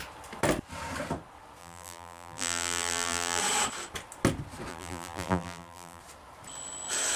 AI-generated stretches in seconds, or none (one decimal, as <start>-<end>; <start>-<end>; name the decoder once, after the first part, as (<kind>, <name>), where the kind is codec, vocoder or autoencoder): 1.6-3.4 (vocoder, BigVGAN v2); 4.7-6.0